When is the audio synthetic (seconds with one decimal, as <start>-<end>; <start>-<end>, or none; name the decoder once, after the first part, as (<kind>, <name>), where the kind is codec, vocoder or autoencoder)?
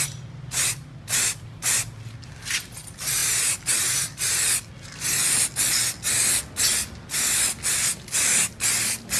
none